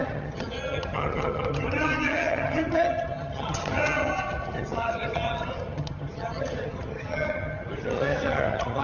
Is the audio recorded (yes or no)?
no